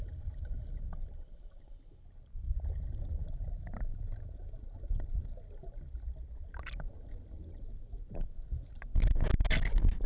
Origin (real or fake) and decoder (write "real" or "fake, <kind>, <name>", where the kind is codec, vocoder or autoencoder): real